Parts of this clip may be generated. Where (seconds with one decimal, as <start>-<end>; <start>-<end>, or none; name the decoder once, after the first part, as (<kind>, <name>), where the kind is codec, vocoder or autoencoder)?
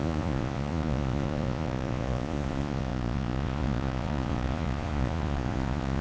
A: 0.0-6.0 (vocoder, Vocos)